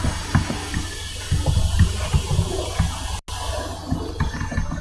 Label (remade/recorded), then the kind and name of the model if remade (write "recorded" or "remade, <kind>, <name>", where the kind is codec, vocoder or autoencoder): recorded